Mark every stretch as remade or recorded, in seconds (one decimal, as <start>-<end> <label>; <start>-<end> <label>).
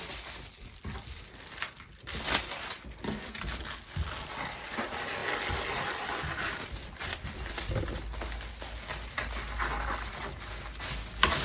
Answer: 0.0-11.4 recorded